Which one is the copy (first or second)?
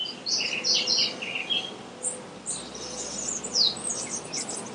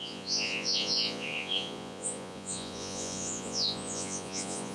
second